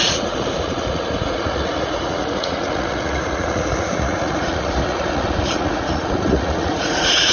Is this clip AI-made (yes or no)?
yes